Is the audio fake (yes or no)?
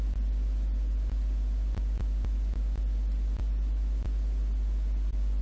no